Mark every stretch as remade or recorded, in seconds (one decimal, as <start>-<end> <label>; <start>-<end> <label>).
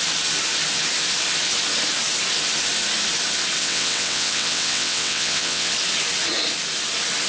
0.0-3.6 recorded; 3.6-5.7 remade; 5.7-7.3 recorded